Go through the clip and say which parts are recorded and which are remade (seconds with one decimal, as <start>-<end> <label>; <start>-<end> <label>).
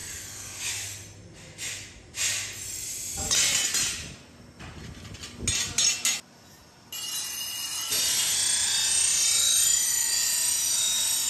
0.0-0.7 remade; 0.7-11.3 recorded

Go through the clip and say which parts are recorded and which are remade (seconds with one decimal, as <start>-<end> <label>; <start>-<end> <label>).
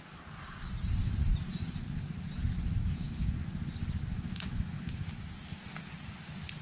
0.0-2.8 recorded; 2.8-3.3 remade; 3.3-4.1 recorded; 4.1-5.1 remade; 5.1-6.6 recorded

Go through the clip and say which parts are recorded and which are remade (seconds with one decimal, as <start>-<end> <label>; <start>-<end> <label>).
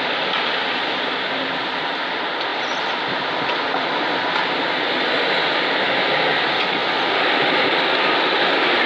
0.0-8.9 recorded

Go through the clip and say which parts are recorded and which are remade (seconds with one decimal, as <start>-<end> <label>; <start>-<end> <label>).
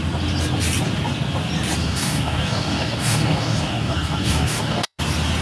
0.0-1.8 recorded; 1.8-5.0 remade; 5.0-5.4 recorded